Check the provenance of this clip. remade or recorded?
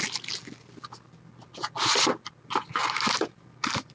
recorded